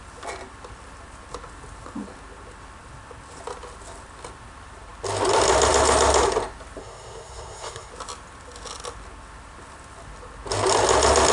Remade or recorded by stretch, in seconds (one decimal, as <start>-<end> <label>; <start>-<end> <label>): 0.0-6.8 recorded; 6.8-7.9 remade; 7.9-11.3 recorded